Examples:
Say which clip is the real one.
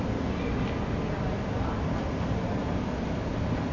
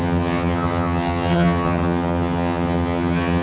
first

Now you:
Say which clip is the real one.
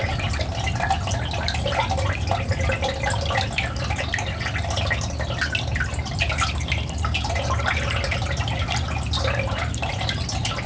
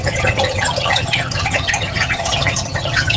first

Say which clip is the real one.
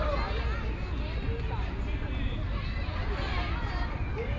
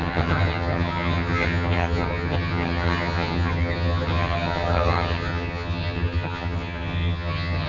first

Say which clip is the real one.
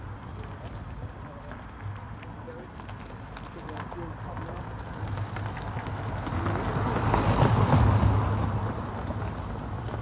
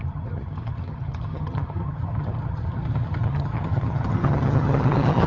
first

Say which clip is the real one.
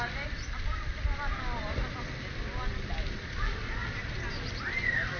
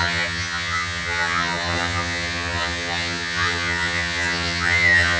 first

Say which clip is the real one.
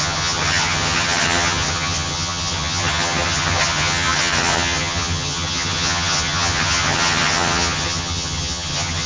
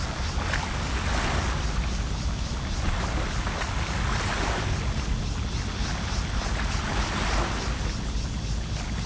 second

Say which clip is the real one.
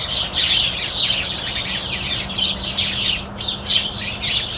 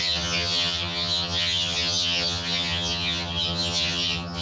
first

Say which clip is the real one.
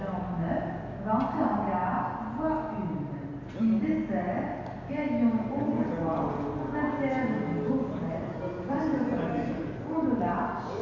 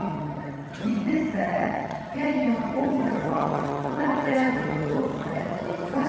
first